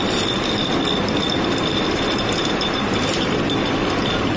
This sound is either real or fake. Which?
fake